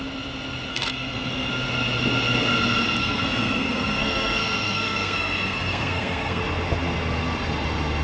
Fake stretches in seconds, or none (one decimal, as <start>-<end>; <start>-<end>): 0.7-1.5; 3.0-6.4